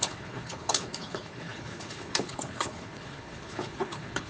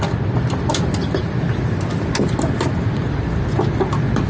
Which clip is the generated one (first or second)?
first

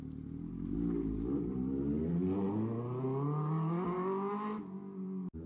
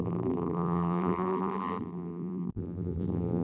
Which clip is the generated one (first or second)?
second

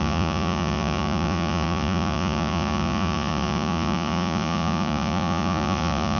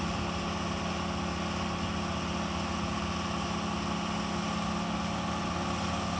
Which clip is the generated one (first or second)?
first